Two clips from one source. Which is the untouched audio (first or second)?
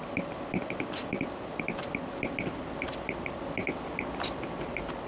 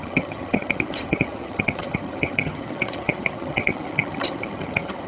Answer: first